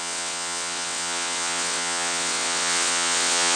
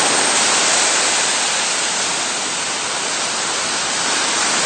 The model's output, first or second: first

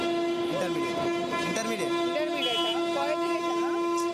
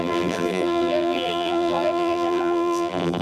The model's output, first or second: second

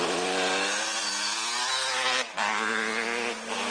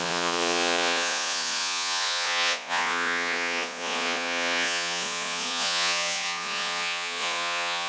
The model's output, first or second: second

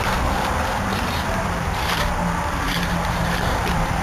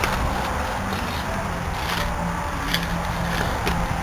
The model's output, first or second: first